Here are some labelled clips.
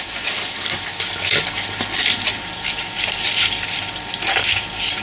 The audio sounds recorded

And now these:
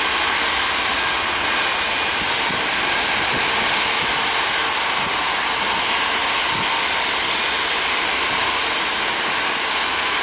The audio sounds recorded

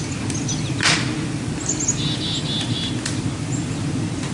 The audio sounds recorded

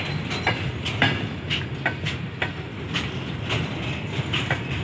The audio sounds recorded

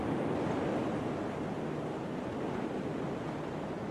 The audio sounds recorded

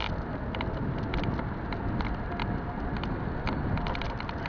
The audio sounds recorded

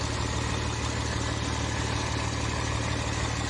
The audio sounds recorded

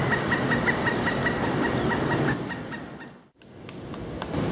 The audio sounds recorded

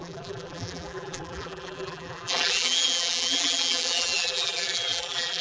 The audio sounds remade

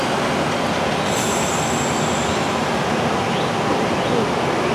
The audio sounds recorded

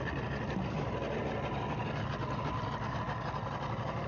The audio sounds recorded